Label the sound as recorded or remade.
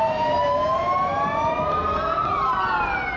recorded